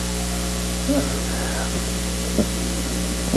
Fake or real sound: real